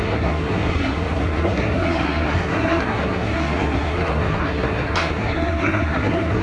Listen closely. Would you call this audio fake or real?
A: fake